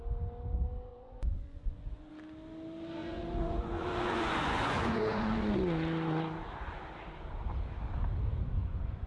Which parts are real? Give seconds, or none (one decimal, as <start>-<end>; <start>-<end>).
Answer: 0.0-0.9; 2.1-3.0; 5.5-8.6